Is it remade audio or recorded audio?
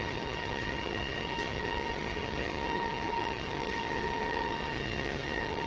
remade